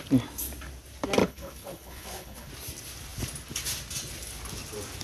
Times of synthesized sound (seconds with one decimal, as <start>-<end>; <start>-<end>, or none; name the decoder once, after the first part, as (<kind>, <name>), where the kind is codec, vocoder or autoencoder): 1.2-2.5 (codec, HILCodec)

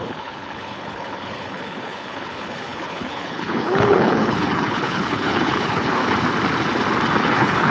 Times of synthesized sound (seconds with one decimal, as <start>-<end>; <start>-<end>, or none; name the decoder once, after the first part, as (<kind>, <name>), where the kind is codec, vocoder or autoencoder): 0.0-6.0 (codec, HILCodec); 7.2-7.7

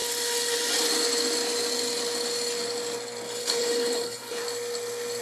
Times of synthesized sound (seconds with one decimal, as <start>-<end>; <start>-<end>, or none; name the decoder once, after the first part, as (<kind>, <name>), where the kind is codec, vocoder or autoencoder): 3.4-4.4 (codec, HILCodec)

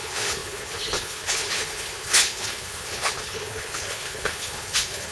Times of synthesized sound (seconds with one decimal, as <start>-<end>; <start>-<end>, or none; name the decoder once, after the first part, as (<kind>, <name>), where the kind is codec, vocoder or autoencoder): 0.0-5.1 (codec, HILCodec)

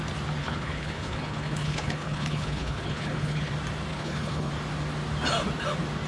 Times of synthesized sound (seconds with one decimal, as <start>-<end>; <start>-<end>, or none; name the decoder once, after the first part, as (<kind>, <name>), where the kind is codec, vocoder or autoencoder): 0.4-3.5 (codec, HILCodec); 3.9-4.5